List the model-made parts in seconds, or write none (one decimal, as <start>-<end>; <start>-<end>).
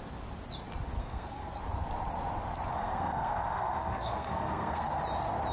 1.0-1.6; 2.7-5.0